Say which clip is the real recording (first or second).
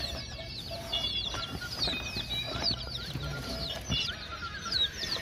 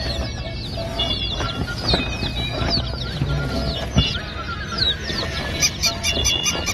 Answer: second